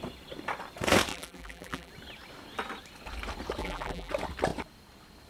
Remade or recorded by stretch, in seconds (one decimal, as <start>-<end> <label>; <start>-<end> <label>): 0.0-1.1 recorded; 1.1-1.9 remade; 1.9-3.6 recorded; 3.6-4.1 remade; 4.1-5.3 recorded